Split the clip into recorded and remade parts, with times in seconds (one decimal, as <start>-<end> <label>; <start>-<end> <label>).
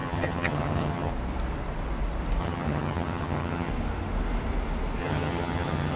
0.0-1.1 remade; 1.1-2.4 recorded; 2.4-3.7 remade; 3.7-5.0 recorded; 5.0-6.0 remade